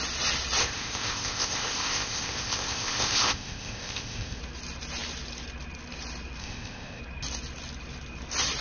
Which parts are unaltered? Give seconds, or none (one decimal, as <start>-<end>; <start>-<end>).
0.0-0.6; 4.4-6.4; 7.0-8.6